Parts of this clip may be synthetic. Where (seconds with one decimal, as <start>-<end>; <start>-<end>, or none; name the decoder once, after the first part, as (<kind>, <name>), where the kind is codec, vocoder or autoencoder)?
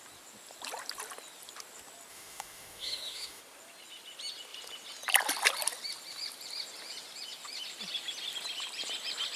2.1-3.4 (autoencoder, DAC-VAE)